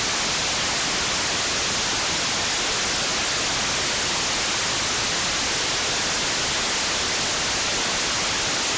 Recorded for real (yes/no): yes